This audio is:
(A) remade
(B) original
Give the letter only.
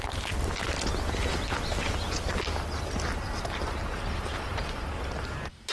B